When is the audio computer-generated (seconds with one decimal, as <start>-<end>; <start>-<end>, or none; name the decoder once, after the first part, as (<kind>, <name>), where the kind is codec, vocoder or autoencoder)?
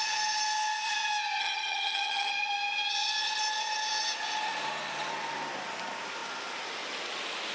1.4-2.3 (vocoder, HiFi-GAN)